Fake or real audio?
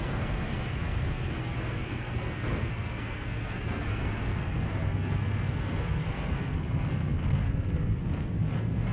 fake